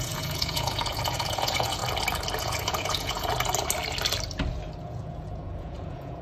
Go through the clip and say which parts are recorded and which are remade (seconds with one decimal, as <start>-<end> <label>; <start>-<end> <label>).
0.0-1.8 remade; 1.8-2.4 recorded; 2.4-3.3 remade; 3.3-4.8 recorded; 4.8-6.2 remade